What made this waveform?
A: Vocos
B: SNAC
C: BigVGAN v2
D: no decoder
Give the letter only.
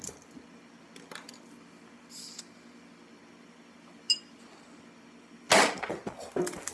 D